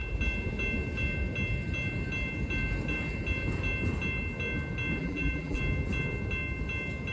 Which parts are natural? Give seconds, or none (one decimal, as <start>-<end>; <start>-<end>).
0.0-5.0; 5.6-7.1